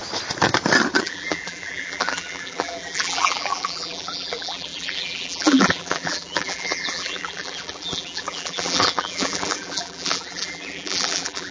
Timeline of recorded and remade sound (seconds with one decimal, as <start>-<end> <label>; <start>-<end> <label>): 0.0-1.0 recorded; 1.0-11.5 remade